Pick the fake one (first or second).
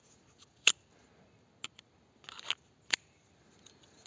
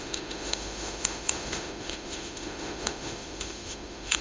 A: second